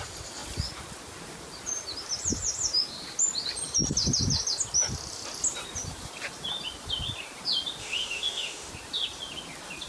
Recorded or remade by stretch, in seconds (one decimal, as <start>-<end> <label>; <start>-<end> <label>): 0.0-7.8 recorded; 7.8-8.7 remade; 8.7-9.9 recorded